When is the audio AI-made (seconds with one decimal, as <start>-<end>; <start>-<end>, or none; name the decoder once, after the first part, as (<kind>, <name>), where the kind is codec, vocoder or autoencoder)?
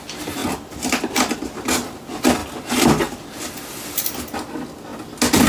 none